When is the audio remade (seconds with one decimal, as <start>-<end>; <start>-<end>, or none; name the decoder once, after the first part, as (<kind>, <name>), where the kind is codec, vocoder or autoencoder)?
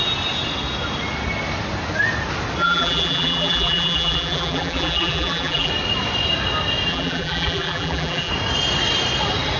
2.6-5.7 (vocoder, BigVGAN v2); 6.9-8.3